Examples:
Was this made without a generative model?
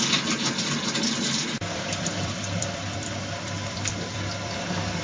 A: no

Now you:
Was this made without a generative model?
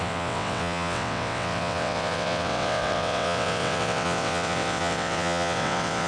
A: no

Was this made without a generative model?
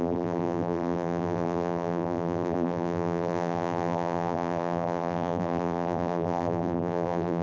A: no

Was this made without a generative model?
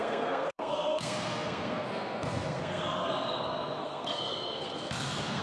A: no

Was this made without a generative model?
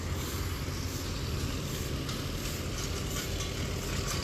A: yes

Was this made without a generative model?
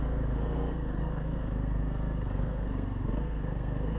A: no